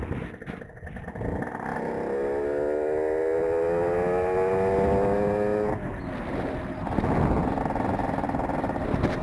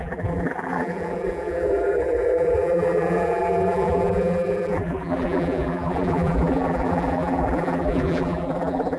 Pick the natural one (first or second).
first